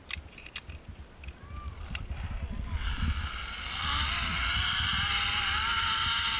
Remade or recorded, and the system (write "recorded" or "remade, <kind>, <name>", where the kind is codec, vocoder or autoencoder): recorded